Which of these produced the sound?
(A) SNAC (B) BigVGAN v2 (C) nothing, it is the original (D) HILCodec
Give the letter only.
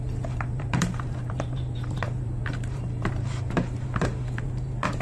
B